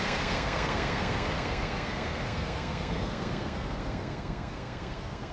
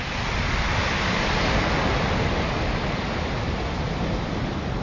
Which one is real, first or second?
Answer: second